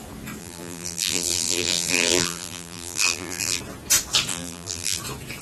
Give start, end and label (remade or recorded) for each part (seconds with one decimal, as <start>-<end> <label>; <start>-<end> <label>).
0.0-0.4 recorded; 0.4-3.6 remade; 3.6-4.3 recorded; 4.3-5.0 remade; 5.0-5.4 recorded